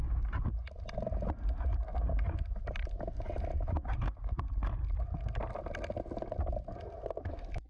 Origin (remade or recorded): recorded